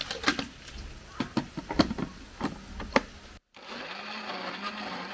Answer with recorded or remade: recorded